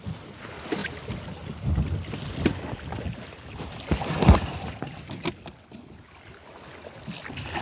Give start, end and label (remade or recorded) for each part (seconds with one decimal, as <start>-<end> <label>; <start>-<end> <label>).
0.0-7.6 recorded